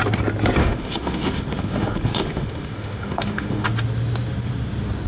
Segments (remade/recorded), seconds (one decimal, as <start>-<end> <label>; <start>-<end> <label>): 0.0-0.6 recorded; 0.6-3.7 remade; 3.7-5.1 recorded